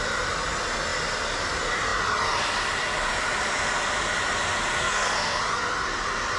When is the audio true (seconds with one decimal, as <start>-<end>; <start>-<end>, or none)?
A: 0.0-4.7; 5.4-6.4